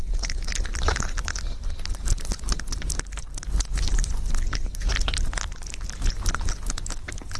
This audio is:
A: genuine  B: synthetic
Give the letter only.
A